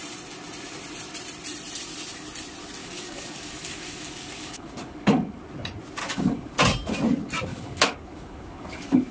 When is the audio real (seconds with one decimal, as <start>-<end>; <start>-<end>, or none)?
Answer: 0.0-2.8; 5.4-6.0; 6.5-7.5